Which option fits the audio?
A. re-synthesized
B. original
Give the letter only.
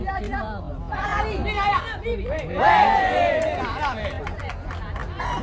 B